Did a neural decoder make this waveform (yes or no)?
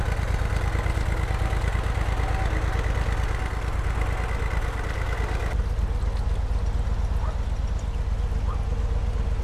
no